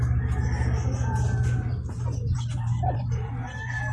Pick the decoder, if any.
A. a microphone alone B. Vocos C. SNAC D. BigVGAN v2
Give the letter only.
A